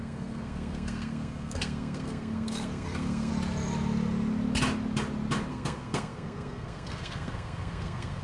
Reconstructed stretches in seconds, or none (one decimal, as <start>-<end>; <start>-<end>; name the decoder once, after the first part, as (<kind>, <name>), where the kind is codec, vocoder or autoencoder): 0.0-3.3 (codec, SNAC); 5.5-8.2

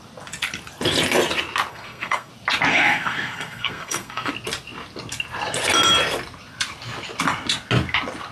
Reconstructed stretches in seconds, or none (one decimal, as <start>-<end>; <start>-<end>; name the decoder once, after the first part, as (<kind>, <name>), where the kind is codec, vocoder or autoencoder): 1.7-2.3 (codec, SNAC); 2.7-4.3